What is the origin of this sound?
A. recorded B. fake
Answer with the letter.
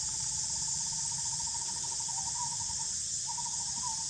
B